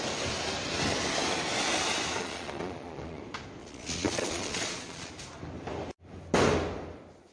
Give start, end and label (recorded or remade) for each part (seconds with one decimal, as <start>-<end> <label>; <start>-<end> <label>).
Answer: 0.0-2.2 recorded; 2.2-3.2 remade; 3.2-3.6 recorded; 3.6-5.1 remade; 5.1-7.3 recorded